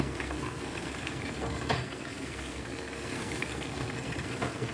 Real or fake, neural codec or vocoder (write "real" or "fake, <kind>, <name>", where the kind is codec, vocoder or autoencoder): fake, codec, SNAC